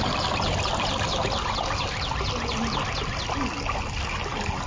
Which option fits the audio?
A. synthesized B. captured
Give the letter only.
B